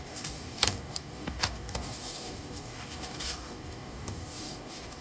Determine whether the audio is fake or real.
fake